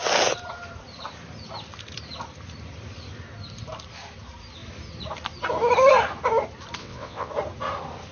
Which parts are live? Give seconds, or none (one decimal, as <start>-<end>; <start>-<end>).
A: 0.0-6.8; 7.3-8.1